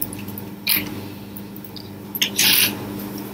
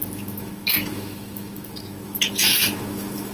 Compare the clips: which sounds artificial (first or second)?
second